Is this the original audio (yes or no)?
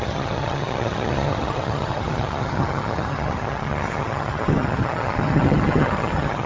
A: no